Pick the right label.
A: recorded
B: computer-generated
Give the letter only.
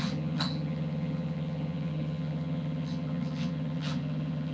B